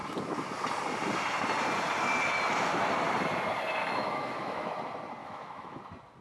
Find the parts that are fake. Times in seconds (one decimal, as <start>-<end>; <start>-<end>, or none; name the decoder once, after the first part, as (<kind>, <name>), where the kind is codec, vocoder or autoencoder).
3.8-4.7 (autoencoder, DAC-VAE); 5.2-5.8

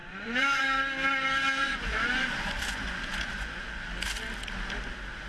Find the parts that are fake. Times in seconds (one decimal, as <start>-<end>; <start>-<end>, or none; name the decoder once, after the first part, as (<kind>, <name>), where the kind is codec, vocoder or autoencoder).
0.0-0.6 (vocoder, Vocos); 1.6-3.9